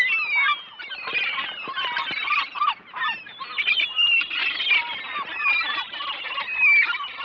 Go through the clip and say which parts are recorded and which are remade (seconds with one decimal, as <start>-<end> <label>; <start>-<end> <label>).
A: 0.0-7.2 recorded